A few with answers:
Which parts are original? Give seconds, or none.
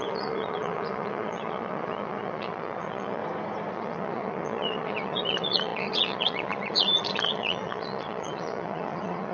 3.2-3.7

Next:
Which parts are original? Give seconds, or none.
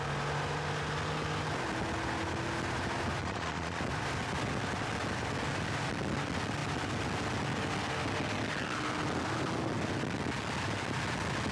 0.0-3.2; 3.8-11.5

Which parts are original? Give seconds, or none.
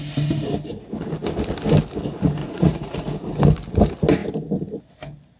0.0-2.4; 3.2-5.4